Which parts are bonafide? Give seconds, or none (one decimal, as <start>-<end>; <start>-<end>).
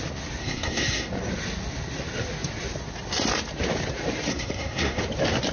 0.0-0.4; 1.1-4.3; 5.0-5.5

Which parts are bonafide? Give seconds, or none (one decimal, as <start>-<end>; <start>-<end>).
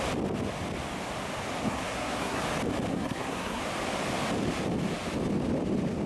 0.0-1.6; 2.4-2.9; 3.6-6.1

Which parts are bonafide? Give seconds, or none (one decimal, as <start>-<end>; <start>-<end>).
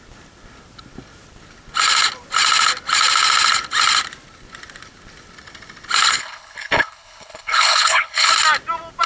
0.0-6.2; 8.3-9.1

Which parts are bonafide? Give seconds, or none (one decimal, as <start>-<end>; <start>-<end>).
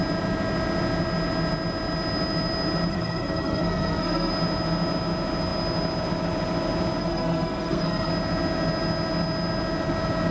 0.0-2.9; 4.3-7.0; 8.1-10.3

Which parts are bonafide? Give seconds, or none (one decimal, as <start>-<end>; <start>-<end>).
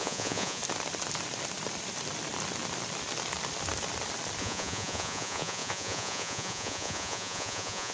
0.6-4.4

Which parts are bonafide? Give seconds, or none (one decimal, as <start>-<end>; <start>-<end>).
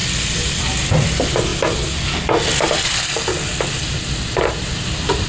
0.0-5.3